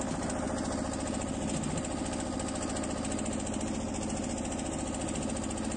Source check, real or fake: real